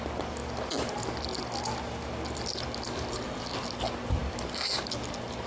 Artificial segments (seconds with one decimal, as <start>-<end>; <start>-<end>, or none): none